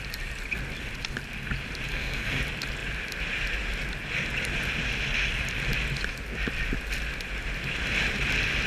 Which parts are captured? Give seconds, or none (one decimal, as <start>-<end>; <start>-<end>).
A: 0.0-1.9; 2.4-8.7

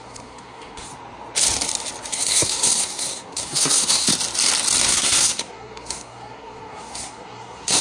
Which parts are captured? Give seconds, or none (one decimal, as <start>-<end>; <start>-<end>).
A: 0.9-2.1; 4.1-4.8

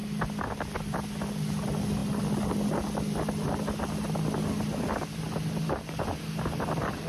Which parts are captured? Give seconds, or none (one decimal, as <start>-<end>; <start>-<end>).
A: 0.0-7.1

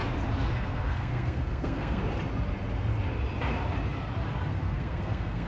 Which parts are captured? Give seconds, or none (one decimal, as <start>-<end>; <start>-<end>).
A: 0.0-0.5; 2.0-4.5

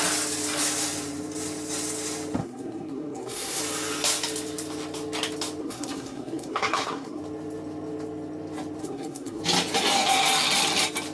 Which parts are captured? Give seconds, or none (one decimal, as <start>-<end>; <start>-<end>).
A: 0.0-2.4; 3.6-5.6; 7.2-8.8; 9.4-11.1

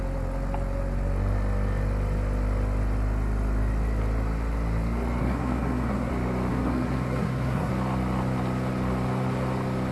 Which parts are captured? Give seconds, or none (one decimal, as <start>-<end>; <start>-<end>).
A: 0.0-5.2; 6.1-6.5; 7.7-9.9

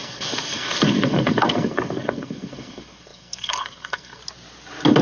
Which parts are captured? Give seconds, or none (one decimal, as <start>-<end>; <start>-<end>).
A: 4.2-5.0

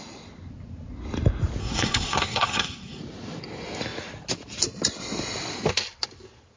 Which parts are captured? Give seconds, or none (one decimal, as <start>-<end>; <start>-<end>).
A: 0.0-1.6; 3.0-6.6